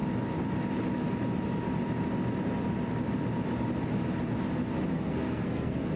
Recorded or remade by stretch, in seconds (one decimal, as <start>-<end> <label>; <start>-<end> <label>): 0.0-4.9 recorded; 4.9-6.0 remade